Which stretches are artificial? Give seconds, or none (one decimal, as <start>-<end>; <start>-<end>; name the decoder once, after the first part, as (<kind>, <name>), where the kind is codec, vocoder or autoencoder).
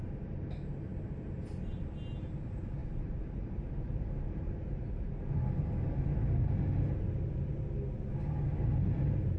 2.8-6.4 (vocoder, BigVGAN v2)